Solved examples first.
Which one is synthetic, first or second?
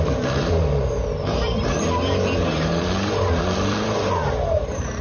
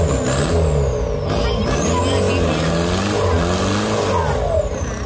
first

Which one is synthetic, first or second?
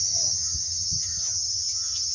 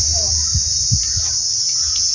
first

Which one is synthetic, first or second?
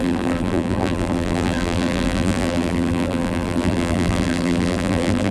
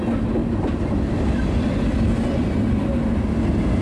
first